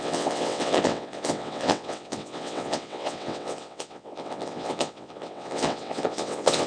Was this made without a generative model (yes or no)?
no